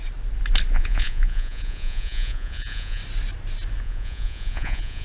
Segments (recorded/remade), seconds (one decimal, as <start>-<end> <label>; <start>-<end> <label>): 0.0-0.7 recorded; 0.7-3.0 remade; 3.0-3.8 recorded; 3.8-5.0 remade